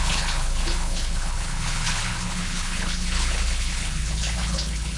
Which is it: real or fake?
fake